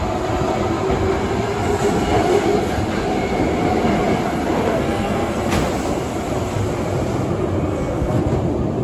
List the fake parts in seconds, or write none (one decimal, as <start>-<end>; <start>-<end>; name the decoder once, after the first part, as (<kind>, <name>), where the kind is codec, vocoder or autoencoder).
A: 4.7-5.4 (codec, SNAC); 7.7-8.2